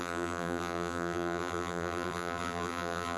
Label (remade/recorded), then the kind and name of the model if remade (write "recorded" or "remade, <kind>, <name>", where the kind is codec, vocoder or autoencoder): remade, vocoder, BigVGAN v2